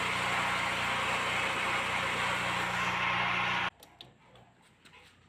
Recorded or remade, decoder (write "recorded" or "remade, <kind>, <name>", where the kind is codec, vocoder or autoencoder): recorded